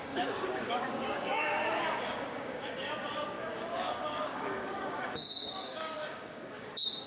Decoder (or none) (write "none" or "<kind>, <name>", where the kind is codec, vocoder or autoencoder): codec, DAC